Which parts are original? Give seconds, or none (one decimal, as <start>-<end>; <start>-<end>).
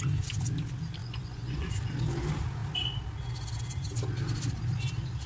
0.0-1.0; 1.7-5.3